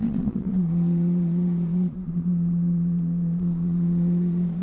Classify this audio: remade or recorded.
remade